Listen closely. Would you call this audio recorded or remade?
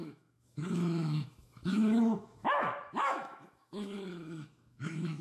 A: remade